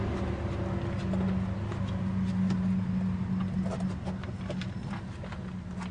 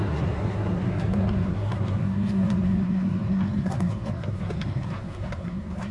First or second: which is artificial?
second